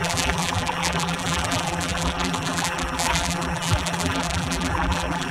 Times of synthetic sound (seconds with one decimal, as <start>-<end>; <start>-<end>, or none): 0.0-5.3